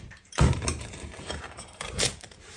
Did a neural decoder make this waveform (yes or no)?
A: yes